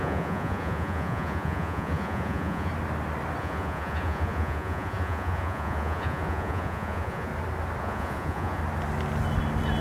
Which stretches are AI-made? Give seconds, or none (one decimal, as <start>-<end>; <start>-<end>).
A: 0.0-2.7; 3.4-7.3; 7.8-8.6